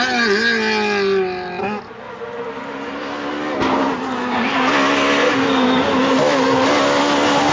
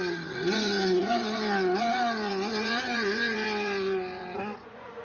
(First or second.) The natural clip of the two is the first